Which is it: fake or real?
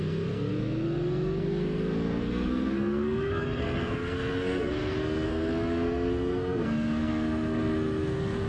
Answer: fake